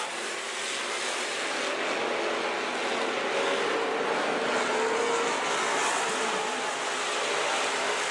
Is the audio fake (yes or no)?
no